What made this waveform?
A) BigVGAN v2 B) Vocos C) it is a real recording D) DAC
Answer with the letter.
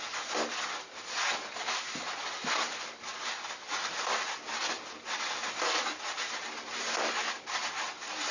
C